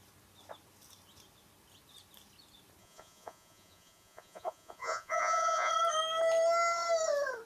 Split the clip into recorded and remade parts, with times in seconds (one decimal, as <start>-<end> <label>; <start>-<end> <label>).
0.0-2.8 recorded; 2.8-5.7 remade; 5.7-7.5 recorded